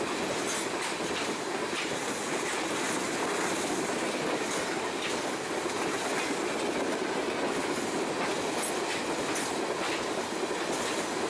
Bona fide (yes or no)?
yes